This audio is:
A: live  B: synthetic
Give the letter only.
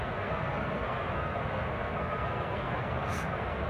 B